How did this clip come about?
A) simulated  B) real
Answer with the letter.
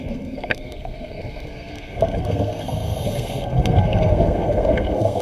A